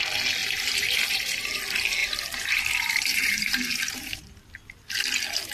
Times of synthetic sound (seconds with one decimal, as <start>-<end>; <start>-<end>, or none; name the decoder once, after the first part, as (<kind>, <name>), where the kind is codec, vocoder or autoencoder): 0.4-1.6 (vocoder, BigVGAN v2); 2.0-4.4